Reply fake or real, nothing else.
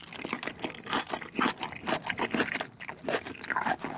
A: real